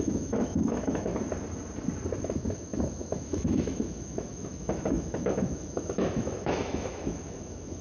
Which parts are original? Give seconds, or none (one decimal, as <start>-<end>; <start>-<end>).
1.1-2.2